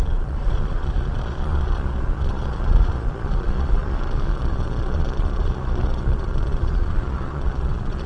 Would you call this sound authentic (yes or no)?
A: no